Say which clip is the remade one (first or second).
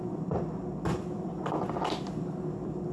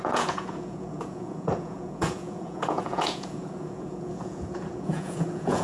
second